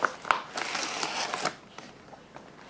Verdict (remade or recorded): recorded